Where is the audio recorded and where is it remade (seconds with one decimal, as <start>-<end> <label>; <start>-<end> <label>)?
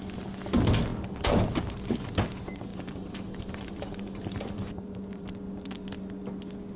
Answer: 0.0-2.7 recorded; 2.7-5.3 remade; 5.3-6.8 recorded